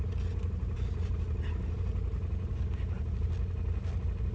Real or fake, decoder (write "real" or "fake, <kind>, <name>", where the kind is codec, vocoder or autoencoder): real